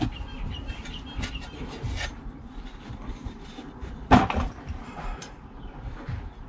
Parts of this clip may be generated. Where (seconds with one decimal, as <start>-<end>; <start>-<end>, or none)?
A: 3.2-6.0